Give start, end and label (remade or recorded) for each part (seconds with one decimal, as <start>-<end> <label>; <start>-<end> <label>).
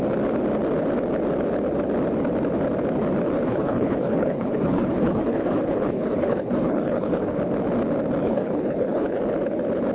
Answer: 0.0-3.5 recorded; 3.5-7.4 remade; 7.4-8.2 recorded; 8.2-9.2 remade; 9.2-9.9 recorded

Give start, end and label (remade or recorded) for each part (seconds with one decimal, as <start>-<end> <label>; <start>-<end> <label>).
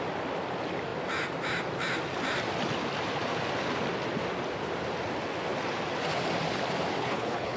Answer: 0.0-7.0 recorded; 7.0-7.6 remade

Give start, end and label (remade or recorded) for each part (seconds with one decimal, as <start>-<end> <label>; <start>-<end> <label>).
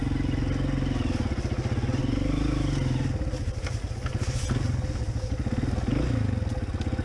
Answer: 0.0-7.0 recorded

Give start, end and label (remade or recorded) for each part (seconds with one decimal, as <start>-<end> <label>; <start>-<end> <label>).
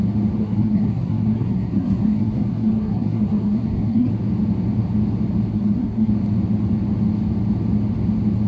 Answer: 0.0-0.4 recorded; 0.4-4.1 remade; 4.1-5.5 recorded; 5.5-6.1 remade; 6.1-8.5 recorded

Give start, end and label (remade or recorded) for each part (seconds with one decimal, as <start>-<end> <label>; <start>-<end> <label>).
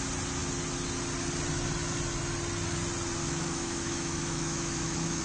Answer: 0.0-3.2 recorded; 3.2-5.2 remade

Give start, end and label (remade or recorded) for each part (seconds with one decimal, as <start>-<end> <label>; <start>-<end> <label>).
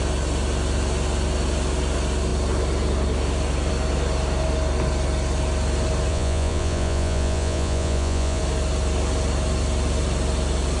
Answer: 0.0-6.1 recorded; 6.1-8.4 remade; 8.4-10.8 recorded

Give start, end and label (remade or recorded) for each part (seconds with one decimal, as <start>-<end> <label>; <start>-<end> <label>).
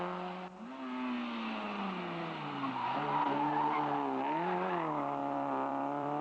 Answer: 0.0-5.2 recorded; 5.2-6.2 remade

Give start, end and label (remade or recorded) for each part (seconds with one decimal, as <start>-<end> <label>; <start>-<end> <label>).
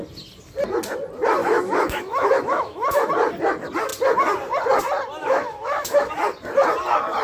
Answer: 0.0-1.4 recorded; 1.4-3.1 remade; 3.1-5.2 recorded; 5.2-6.1 remade; 6.1-7.2 recorded